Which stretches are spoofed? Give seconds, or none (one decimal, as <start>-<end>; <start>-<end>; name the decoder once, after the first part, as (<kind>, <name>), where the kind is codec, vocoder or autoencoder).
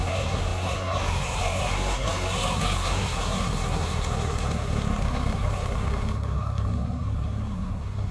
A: 0.0-8.1 (codec, SNAC)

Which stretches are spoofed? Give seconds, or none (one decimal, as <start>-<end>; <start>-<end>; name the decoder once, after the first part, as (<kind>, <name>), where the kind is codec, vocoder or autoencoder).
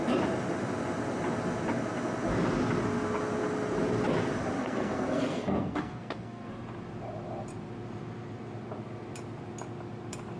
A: 4.6-6.5 (codec, SNAC)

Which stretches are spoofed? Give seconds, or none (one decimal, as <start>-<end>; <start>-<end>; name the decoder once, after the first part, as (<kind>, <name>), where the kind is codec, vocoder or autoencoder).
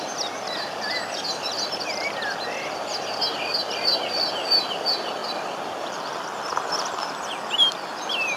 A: none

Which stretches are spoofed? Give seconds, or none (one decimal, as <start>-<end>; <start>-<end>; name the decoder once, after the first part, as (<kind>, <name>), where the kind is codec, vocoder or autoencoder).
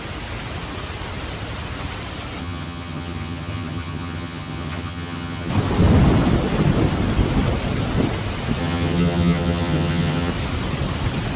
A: 2.4-5.5 (vocoder, HiFi-GAN); 8.6-10.3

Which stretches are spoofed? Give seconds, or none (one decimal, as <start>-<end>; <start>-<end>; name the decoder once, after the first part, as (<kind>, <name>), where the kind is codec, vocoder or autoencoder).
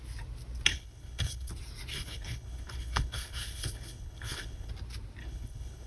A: 0.7-1.5 (codec, HILCodec); 1.9-4.7; 5.2-5.9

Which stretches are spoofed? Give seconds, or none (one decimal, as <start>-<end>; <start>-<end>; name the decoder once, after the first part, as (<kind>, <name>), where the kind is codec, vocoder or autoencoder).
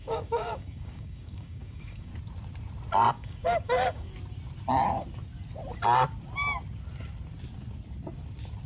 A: 0.0-2.1 (codec, DAC); 3.1-4.1